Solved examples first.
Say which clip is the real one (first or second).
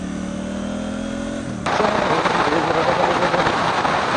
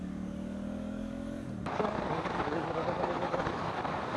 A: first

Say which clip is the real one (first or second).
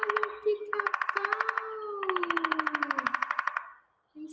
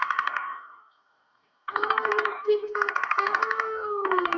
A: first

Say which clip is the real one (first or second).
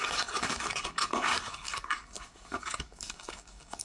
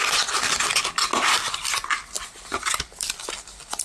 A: second